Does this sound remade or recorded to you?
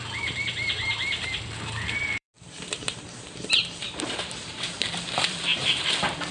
remade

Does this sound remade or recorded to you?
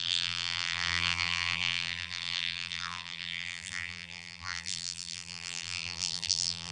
remade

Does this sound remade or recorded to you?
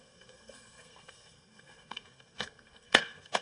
remade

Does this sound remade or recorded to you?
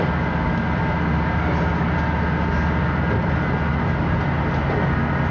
recorded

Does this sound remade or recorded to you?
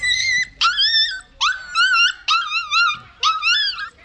recorded